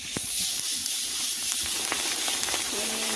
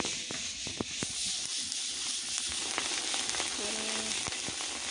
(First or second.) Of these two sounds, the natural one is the second